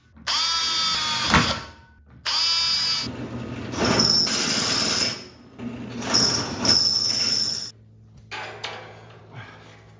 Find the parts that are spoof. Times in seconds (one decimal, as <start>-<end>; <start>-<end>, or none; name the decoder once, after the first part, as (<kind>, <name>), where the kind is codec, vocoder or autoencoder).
8.6-9.2 (vocoder, Vocos)